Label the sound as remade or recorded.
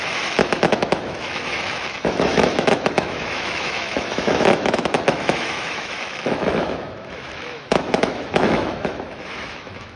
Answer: remade